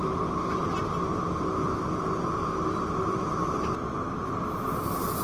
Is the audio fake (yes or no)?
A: no